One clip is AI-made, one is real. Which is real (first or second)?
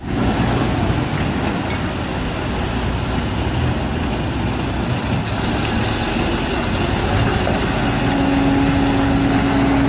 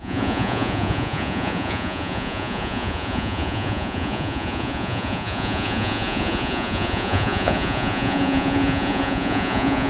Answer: first